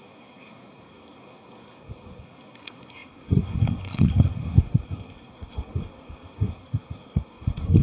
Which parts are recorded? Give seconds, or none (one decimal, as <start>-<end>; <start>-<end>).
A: none